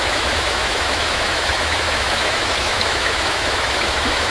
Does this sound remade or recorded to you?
remade